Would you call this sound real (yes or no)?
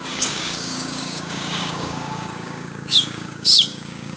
no